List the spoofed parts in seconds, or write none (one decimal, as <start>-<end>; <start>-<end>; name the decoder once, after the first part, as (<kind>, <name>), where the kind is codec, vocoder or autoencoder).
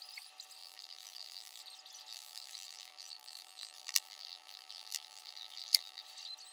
0.6-1.6 (vocoder, BigVGAN v2); 2.1-6.0